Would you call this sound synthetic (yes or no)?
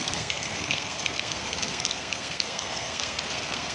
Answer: yes